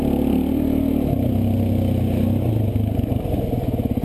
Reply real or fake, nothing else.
real